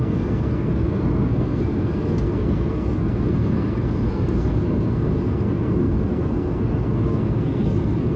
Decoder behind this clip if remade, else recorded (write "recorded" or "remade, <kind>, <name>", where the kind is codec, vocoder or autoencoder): remade, codec, SNAC